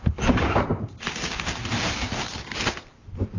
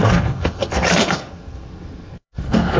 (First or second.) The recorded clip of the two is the first